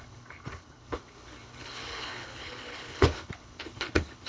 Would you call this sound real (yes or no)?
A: no